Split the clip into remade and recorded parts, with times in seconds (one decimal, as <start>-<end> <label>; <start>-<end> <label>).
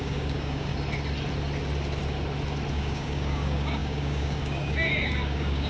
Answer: 0.0-0.7 remade; 0.7-2.7 recorded; 2.7-5.7 remade